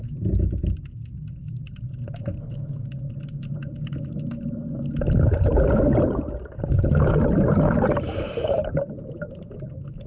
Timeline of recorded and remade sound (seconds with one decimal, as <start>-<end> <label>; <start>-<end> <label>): 0.0-10.1 recorded